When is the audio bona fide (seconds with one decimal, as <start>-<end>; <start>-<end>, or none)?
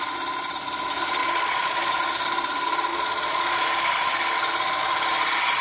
0.0-1.2; 1.9-2.9; 3.6-5.6